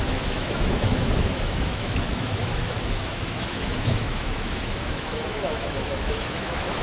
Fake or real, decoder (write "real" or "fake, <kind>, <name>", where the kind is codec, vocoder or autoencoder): fake, autoencoder, DAC-VAE